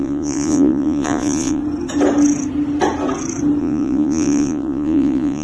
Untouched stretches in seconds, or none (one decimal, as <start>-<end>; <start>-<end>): 1.6-3.6